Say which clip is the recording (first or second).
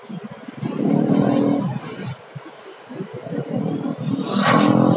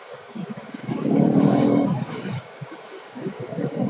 first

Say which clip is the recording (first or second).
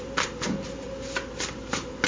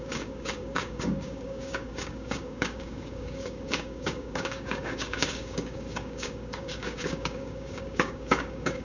first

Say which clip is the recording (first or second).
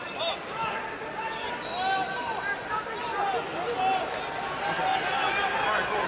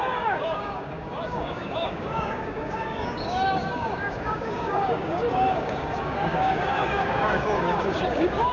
first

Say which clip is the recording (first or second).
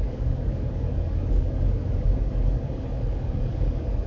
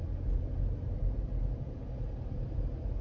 second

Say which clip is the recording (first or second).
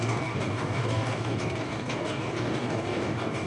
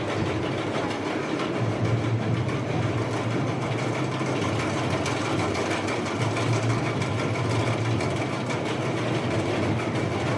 second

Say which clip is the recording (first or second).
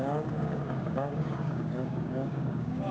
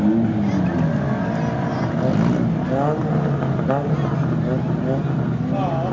second